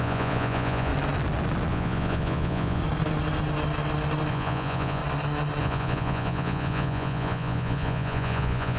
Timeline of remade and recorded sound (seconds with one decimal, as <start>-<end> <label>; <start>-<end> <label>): 0.0-0.9 remade; 0.9-1.7 recorded; 1.7-2.8 remade; 2.8-4.3 recorded; 4.3-5.0 remade; 5.0-5.6 recorded; 5.6-8.8 remade